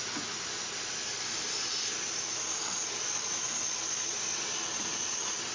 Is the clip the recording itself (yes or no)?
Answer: yes